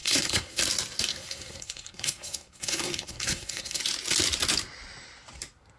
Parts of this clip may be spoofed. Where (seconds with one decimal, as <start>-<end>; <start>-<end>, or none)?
0.0-0.6; 1.1-3.8